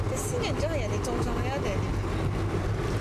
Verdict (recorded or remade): recorded